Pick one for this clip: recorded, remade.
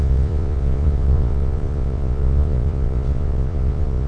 remade